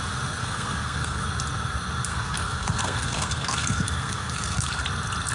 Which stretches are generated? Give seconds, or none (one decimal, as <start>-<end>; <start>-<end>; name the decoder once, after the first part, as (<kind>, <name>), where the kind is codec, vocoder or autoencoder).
0.4-1.2 (codec, SNAC); 2.1-4.8